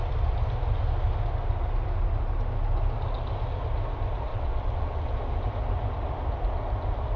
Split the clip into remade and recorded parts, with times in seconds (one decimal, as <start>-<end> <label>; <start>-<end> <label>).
0.0-4.3 recorded; 4.3-5.1 remade; 5.1-7.2 recorded